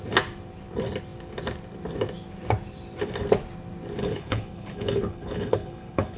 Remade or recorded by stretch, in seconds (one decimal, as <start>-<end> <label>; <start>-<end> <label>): 0.0-4.0 recorded; 4.0-6.2 remade